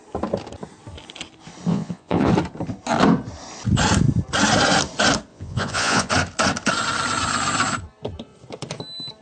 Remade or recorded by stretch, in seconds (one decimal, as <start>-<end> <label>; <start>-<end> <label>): 0.0-1.7 recorded; 1.7-2.3 remade; 2.3-5.3 recorded; 5.3-6.1 remade; 6.1-9.2 recorded